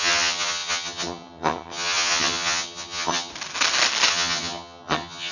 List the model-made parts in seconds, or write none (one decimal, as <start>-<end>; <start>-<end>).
0.0-3.3; 4.1-5.3